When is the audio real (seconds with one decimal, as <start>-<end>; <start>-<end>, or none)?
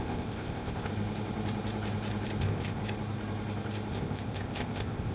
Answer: 0.9-2.4; 2.8-3.9